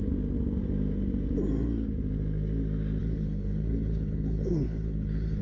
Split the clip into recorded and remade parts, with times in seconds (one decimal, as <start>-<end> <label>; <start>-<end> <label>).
0.0-3.0 recorded; 3.0-5.4 remade